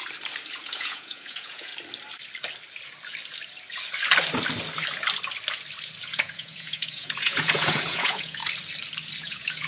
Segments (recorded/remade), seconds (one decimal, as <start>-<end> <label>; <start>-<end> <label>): 0.0-0.6 recorded; 0.6-1.7 remade; 1.7-6.0 recorded; 6.0-8.4 remade; 8.4-9.2 recorded; 9.2-9.7 remade